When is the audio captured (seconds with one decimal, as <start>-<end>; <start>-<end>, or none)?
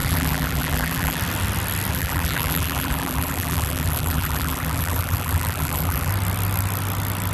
1.2-1.9; 6.1-7.3